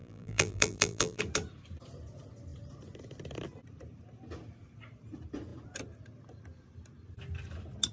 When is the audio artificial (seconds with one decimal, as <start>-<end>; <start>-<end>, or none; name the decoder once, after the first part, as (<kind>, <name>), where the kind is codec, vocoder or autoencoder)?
0.0-1.2 (vocoder, BigVGAN v2)